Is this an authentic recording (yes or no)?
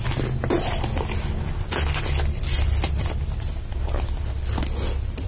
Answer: yes